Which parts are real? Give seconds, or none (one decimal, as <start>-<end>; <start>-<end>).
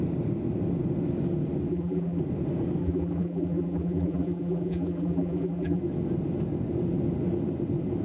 0.0-1.7; 2.2-2.8; 5.8-8.0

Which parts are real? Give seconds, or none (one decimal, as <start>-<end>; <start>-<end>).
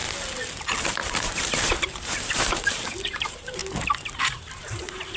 0.0-1.1; 3.6-4.2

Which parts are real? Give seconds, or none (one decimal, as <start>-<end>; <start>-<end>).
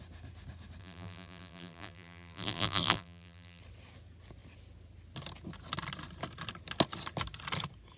0.0-0.8; 3.6-8.0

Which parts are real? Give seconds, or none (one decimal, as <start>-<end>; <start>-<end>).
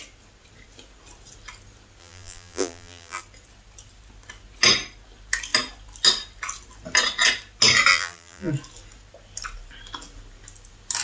0.0-2.0; 3.2-7.9; 8.5-11.0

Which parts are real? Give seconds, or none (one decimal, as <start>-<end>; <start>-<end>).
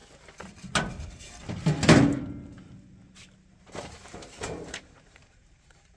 0.0-3.6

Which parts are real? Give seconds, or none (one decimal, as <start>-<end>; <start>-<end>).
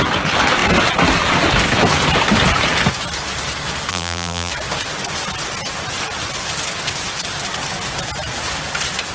0.0-3.9; 4.5-9.1